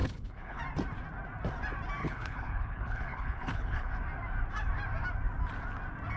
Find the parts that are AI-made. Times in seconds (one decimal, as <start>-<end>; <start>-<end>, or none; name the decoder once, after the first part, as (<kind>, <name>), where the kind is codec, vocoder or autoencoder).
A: 0.0-0.6 (codec, HILCodec); 2.0-3.9